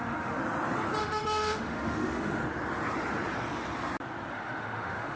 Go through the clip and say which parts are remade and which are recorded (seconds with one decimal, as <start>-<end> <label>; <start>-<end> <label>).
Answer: 0.0-0.4 remade; 0.4-1.0 recorded; 1.0-2.4 remade; 2.4-4.3 recorded; 4.3-5.2 remade